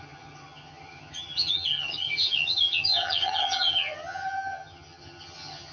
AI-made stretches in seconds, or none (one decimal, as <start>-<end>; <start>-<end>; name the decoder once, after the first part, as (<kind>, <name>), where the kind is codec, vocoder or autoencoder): 0.0-5.7 (vocoder, HiFi-GAN)